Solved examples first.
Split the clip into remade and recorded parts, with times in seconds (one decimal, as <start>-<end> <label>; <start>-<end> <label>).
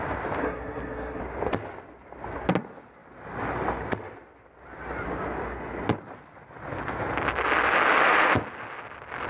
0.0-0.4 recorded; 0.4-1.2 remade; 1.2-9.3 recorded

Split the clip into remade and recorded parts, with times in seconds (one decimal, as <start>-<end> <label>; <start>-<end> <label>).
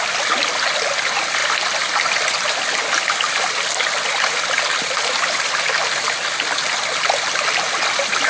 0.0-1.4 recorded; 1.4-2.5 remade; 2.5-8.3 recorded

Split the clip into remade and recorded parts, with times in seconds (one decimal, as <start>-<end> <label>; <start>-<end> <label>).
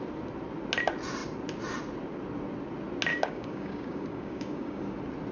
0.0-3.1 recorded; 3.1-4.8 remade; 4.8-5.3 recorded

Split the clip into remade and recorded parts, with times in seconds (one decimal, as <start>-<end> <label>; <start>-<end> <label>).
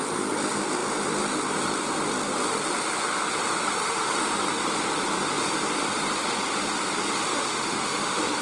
0.0-3.8 recorded; 3.8-4.4 remade; 4.4-7.3 recorded; 7.3-8.4 remade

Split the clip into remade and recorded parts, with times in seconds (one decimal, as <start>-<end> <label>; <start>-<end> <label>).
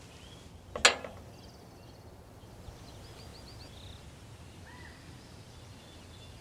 0.0-6.4 recorded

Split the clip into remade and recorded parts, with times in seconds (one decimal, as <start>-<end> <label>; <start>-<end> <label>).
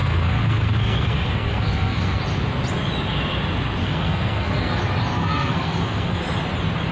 0.0-2.2 remade; 2.2-3.8 recorded; 3.8-4.8 remade; 4.8-5.2 recorded; 5.2-6.2 remade; 6.2-6.9 recorded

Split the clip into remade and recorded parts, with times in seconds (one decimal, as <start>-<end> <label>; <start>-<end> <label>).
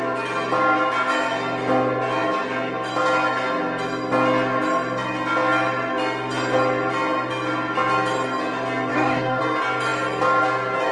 0.0-8.9 recorded; 8.9-9.4 remade; 9.4-10.9 recorded